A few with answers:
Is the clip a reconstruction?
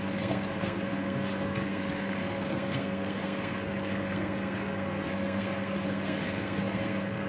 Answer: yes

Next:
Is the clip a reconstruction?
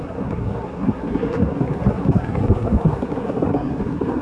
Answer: yes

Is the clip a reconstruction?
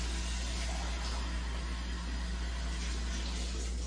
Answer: no